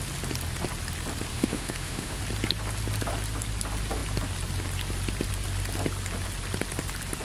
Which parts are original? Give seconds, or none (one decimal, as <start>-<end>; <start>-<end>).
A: 0.0-1.3; 2.2-7.2